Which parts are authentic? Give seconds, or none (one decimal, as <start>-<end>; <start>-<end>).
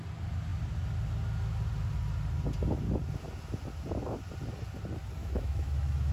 0.0-5.2